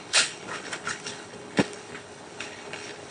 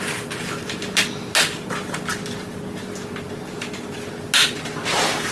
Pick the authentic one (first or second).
second